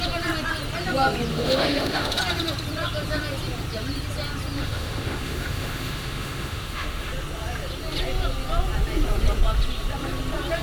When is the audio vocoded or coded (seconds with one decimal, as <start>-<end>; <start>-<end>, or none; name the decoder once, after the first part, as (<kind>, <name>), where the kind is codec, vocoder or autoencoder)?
1.3-2.2 (autoencoder, DAC-VAE); 4.6-7.1